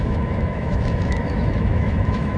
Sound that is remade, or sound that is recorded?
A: remade